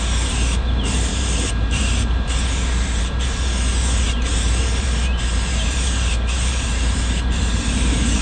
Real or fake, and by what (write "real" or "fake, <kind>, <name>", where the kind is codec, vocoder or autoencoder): fake, vocoder, BigVGAN v2